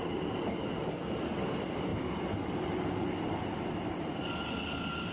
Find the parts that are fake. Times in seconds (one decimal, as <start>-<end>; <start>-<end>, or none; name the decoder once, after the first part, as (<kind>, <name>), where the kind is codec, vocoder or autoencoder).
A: none